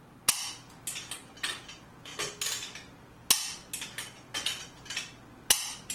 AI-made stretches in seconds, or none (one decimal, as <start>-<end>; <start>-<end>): none